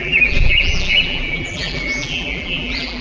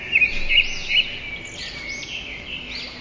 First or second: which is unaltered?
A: second